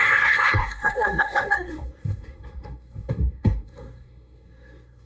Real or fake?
fake